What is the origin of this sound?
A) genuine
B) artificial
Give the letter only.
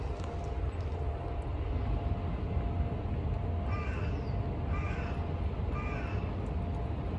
A